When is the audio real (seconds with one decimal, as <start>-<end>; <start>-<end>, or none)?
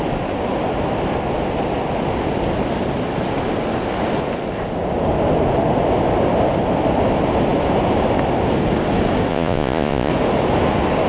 0.0-9.3; 10.1-11.1